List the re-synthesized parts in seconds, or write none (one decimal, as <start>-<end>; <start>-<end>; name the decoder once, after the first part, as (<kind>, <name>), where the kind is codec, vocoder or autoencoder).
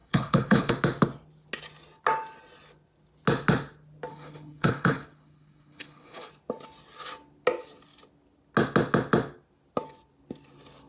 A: 0.0-0.7 (codec, HILCodec); 4.1-6.3